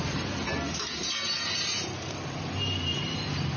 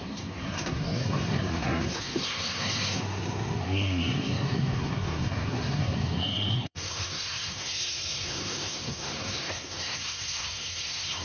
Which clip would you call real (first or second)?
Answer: first